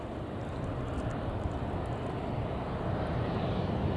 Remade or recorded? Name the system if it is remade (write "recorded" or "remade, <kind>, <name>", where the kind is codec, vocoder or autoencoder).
recorded